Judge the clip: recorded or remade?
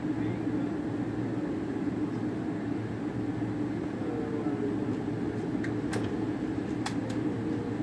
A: recorded